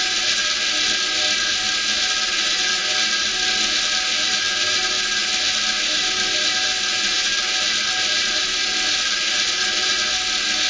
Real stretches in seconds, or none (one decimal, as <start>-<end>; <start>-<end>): 0.0-10.7